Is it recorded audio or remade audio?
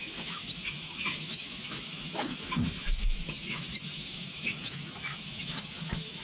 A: remade